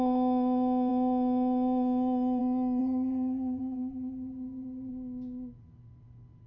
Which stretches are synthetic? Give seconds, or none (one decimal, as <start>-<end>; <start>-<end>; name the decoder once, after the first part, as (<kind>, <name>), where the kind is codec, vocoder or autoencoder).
2.8-4.9 (vocoder, Vocos)